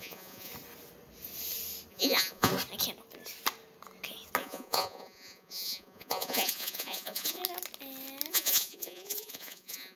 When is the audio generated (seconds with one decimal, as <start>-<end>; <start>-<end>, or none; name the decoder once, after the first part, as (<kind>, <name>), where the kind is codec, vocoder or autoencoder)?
0.0-0.5 (vocoder, Vocos); 1.9-2.5; 4.4-7.4; 8.3-10.0